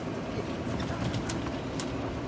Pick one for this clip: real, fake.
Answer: fake